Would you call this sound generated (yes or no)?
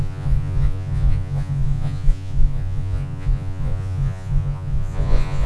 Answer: yes